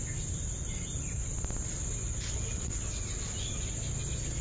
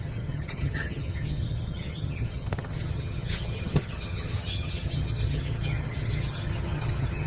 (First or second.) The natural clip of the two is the first